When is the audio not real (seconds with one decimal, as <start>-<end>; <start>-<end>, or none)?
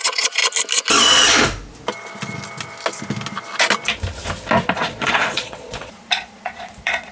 0.0-0.4; 4.7-7.1